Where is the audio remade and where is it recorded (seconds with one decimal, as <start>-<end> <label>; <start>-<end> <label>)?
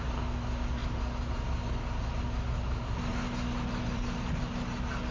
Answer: 0.0-5.1 recorded